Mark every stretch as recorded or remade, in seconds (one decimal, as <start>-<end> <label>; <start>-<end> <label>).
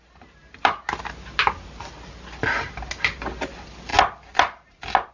0.0-5.1 recorded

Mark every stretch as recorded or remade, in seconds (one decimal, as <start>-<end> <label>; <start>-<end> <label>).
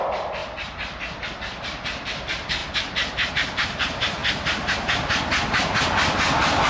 0.0-2.6 remade; 2.6-3.3 recorded; 3.3-4.2 remade; 4.2-4.7 recorded; 4.7-6.7 remade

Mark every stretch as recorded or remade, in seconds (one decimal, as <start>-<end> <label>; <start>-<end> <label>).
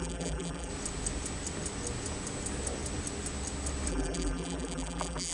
0.0-0.7 remade; 0.7-3.9 recorded; 3.9-5.3 remade